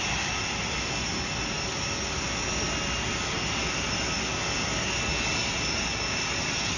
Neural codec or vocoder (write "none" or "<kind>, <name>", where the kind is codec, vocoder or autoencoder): none